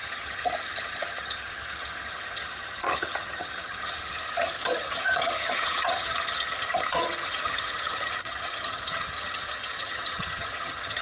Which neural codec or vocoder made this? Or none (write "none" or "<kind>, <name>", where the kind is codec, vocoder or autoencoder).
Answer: vocoder, HiFi-GAN